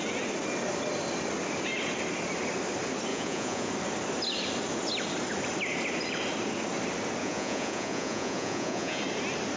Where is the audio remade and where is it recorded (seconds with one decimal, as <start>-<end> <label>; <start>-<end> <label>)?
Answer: 0.0-3.1 recorded; 3.1-3.7 remade; 3.7-7.2 recorded; 7.2-9.0 remade; 9.0-9.6 recorded